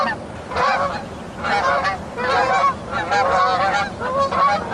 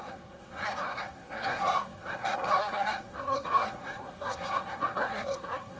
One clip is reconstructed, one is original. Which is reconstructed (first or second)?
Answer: second